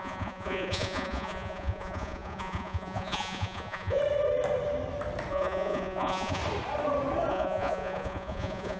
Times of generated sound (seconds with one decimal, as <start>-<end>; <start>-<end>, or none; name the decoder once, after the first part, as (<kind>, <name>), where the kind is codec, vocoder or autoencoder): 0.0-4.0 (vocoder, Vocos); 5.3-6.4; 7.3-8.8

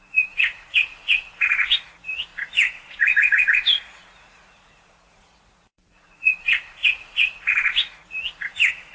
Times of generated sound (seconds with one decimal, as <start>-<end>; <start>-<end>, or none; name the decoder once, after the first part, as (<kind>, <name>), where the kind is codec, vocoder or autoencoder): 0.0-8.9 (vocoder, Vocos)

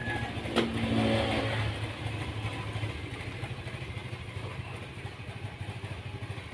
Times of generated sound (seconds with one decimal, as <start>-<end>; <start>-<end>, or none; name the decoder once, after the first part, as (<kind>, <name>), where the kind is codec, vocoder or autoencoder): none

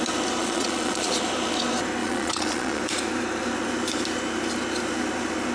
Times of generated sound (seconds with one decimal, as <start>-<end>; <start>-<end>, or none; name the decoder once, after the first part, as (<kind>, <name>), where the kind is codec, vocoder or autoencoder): 0.4-1.1 (vocoder, Vocos); 2.0-2.8

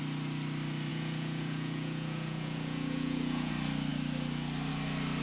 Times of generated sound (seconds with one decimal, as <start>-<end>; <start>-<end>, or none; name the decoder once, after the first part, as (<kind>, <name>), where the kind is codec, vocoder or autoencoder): 0.9-3.5 (vocoder, Vocos)